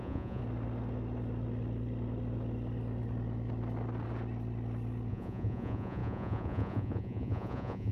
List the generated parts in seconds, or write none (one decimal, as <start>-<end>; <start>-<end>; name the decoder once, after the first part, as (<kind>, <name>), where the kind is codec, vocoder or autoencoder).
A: 0.0-0.4 (vocoder, Vocos); 5.1-7.9